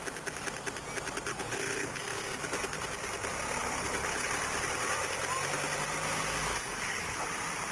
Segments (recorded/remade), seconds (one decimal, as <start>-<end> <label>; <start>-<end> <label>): 0.0-1.3 recorded; 1.3-2.0 remade; 2.0-3.6 recorded; 3.6-4.3 remade; 4.3-6.5 recorded; 6.5-7.3 remade; 7.3-7.7 recorded